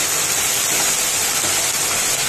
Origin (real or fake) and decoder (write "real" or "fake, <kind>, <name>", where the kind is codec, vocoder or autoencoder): real